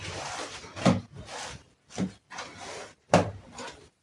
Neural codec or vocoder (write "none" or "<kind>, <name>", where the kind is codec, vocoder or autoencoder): none